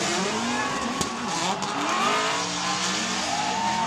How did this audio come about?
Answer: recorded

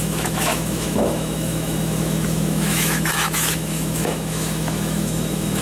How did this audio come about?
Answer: remade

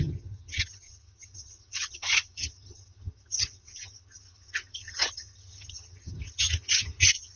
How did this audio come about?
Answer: remade